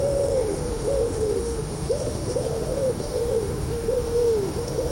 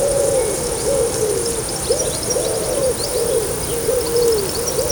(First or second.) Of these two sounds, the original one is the second